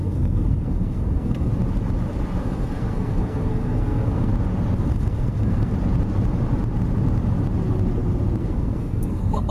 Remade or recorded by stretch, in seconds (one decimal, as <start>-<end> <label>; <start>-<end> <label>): 0.0-1.5 remade; 1.5-2.4 recorded; 2.4-4.3 remade; 4.3-4.8 recorded; 4.8-5.7 remade; 5.7-8.4 recorded; 8.4-9.5 remade